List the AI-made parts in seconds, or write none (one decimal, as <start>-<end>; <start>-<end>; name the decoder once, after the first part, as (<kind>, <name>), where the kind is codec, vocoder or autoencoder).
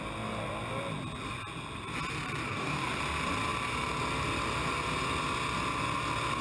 2.4-3.0 (codec, DAC)